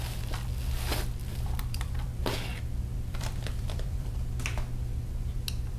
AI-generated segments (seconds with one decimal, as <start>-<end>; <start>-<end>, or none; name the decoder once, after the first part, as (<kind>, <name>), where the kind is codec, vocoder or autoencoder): 1.2-4.1 (vocoder, BigVGAN v2)